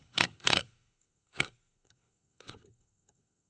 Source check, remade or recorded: remade